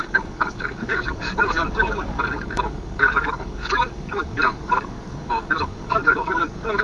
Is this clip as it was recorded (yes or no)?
no